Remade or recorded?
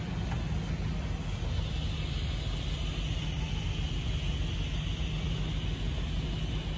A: recorded